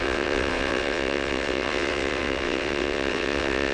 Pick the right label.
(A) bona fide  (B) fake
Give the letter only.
B